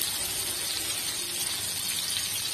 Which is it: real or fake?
real